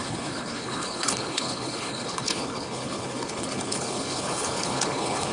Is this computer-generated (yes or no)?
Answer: yes